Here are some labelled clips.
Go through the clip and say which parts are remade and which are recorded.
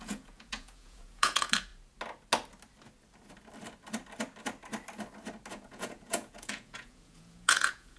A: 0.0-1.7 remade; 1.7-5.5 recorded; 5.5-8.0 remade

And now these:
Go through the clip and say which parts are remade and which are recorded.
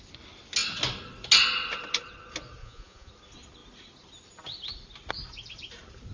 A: 0.0-2.6 recorded; 2.6-3.1 remade; 3.1-6.1 recorded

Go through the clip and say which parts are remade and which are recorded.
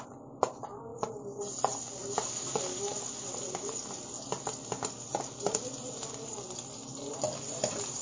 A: 0.0-8.0 recorded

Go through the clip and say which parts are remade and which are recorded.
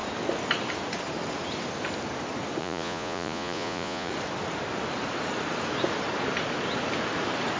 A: 0.0-2.6 recorded; 2.6-4.1 remade; 4.1-7.6 recorded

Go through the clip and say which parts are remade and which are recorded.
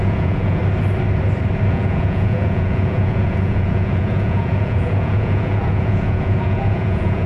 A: 0.0-0.6 remade; 0.6-1.7 recorded; 1.7-7.3 remade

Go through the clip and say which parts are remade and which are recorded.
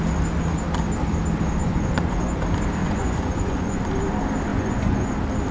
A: 0.0-1.6 recorded; 1.6-2.4 remade; 2.4-2.8 recorded; 2.8-3.8 remade; 3.8-4.5 recorded; 4.5-5.1 remade; 5.1-5.5 recorded